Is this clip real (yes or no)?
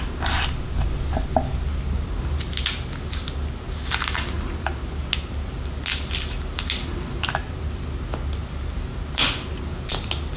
yes